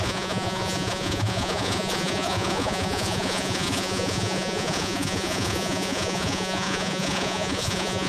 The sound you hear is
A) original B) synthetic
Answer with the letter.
B